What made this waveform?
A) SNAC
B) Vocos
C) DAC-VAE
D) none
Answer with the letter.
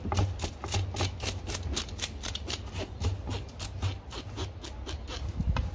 D